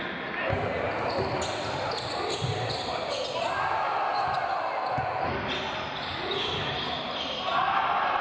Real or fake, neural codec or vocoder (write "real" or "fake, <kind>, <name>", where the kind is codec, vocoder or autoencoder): real